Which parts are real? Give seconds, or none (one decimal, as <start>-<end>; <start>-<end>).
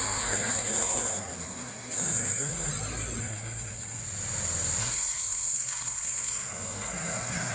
2.7-3.2; 4.0-4.8